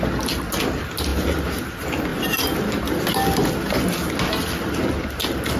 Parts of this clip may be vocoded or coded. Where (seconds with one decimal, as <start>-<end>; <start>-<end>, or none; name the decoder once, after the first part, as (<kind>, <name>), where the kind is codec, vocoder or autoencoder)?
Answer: none